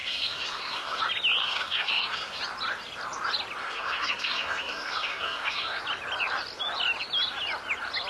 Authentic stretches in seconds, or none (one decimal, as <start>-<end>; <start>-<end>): 1.0-1.4; 2.4-3.6; 5.8-8.1